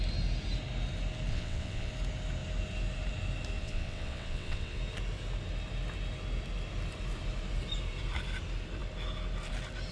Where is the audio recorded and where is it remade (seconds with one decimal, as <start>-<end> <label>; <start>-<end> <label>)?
0.0-1.3 recorded; 1.3-1.9 remade; 1.9-3.6 recorded; 3.6-4.8 remade; 4.8-9.9 recorded